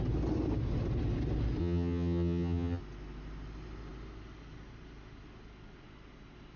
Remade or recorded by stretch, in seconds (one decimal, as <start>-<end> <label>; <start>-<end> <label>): 0.0-1.6 recorded; 1.6-2.8 remade; 2.8-6.6 recorded